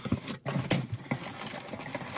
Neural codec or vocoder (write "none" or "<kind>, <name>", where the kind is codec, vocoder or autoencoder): none